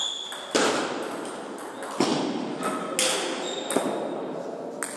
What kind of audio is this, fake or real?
real